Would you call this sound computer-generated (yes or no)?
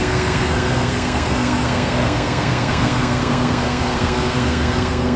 yes